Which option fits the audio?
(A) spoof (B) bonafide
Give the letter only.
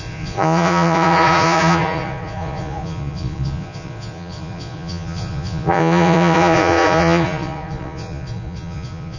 A